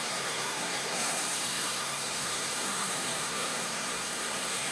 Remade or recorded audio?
remade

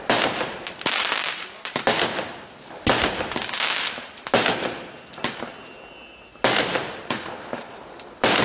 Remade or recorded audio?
recorded